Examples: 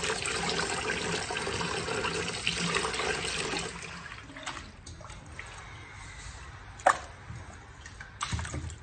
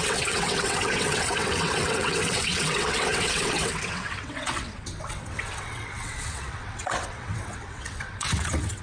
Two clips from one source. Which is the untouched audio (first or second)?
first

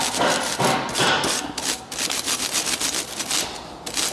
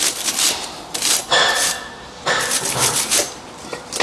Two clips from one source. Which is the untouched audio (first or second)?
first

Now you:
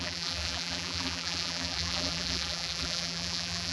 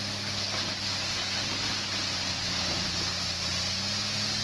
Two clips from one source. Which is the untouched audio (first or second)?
second